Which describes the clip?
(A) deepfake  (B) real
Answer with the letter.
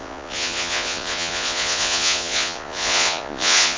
A